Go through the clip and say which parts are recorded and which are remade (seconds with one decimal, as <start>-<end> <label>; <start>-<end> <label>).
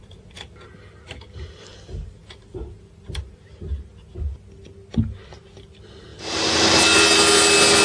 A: 0.0-7.8 recorded